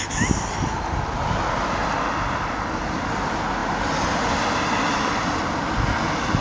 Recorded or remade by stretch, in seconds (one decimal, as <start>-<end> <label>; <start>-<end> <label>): 0.0-6.4 recorded